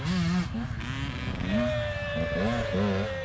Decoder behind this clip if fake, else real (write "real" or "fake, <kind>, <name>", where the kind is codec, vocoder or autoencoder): real